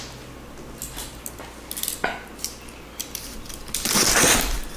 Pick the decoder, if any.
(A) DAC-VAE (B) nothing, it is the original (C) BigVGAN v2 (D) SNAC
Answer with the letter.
B